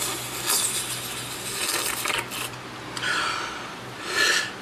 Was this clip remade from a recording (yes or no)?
no